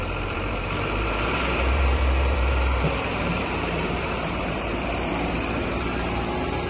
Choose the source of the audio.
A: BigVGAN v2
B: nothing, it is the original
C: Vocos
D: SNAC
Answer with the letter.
A